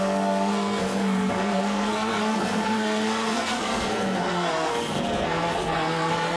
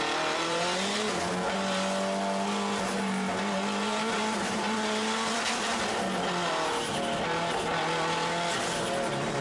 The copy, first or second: first